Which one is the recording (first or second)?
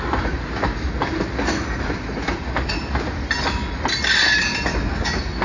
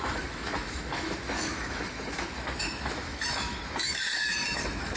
first